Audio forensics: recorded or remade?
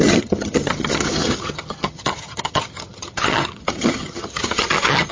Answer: remade